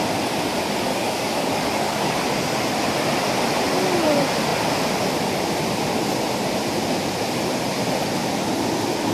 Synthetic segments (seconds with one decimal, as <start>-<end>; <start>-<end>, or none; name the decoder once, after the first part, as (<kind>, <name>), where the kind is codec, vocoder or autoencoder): 0.9-2.1 (codec, DAC)